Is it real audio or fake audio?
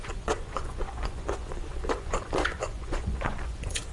fake